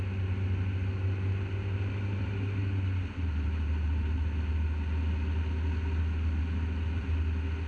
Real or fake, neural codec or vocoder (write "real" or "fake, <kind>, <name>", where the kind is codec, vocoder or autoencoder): real